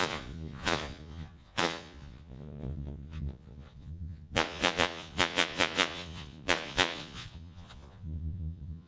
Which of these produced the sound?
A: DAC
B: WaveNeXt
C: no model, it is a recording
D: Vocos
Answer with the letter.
D